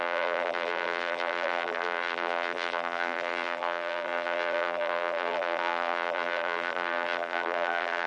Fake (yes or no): yes